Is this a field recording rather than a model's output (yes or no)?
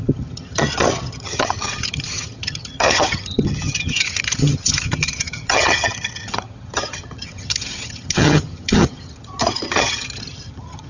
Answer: no